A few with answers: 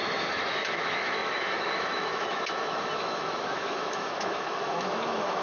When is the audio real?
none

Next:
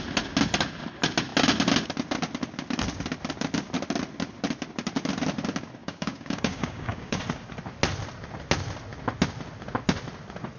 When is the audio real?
0.0-5.8; 7.2-10.6

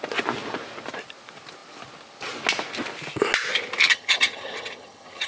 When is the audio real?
0.0-3.9

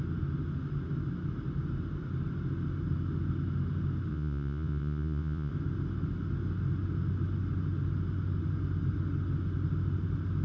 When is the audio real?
0.0-4.1; 5.5-10.4

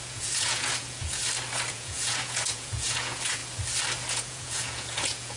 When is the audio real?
1.2-1.7; 3.4-4.1

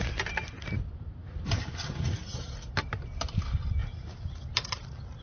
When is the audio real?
0.0-5.2

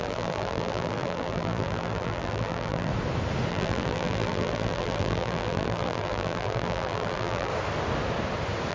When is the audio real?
2.9-3.5; 7.5-8.7

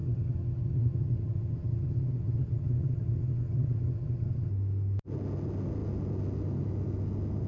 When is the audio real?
4.5-7.5